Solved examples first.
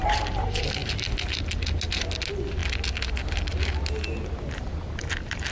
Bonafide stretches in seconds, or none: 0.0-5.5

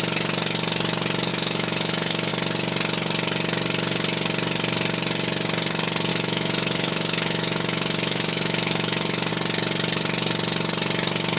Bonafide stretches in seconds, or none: 0.0-1.3; 2.3-6.1; 9.3-11.4

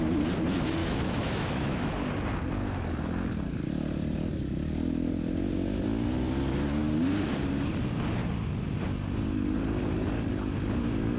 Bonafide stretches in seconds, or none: 0.0-0.8; 1.9-11.2

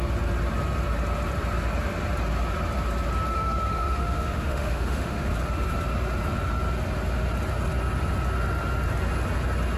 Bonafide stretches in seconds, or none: 0.0-3.3; 5.3-9.8

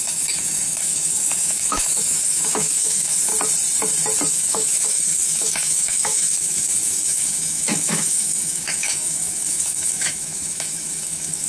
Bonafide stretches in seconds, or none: 3.3-4.3